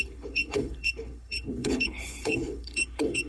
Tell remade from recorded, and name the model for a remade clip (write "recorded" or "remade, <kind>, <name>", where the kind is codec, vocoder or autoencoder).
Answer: remade, codec, HILCodec